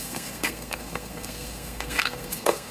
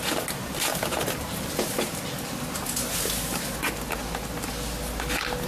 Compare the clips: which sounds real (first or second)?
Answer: second